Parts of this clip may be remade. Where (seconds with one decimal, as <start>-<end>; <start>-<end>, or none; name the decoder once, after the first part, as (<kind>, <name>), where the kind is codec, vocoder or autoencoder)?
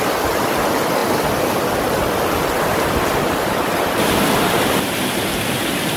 none